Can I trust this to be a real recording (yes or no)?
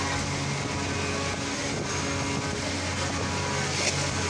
yes